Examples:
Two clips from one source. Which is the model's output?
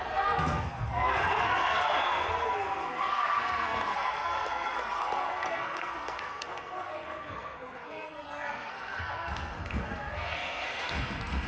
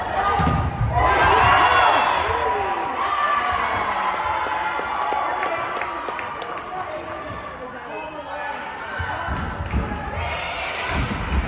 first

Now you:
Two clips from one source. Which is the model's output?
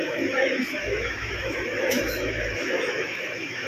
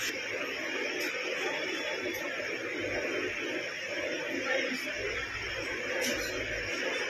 first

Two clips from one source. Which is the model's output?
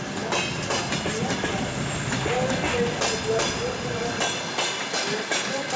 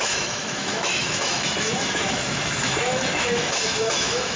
second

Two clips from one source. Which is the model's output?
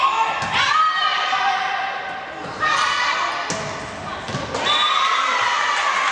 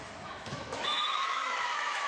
second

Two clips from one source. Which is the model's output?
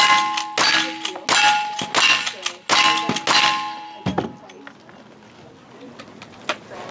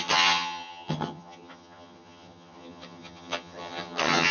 second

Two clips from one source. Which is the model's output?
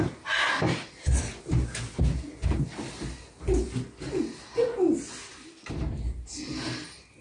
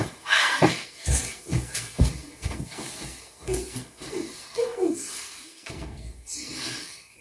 second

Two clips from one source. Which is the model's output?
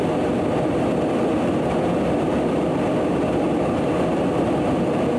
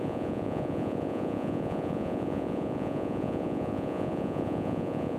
second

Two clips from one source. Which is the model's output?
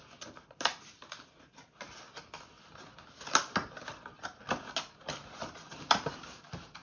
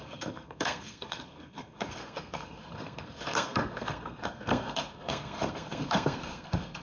second